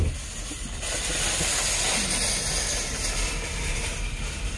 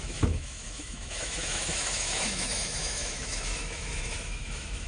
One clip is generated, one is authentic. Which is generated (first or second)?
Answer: second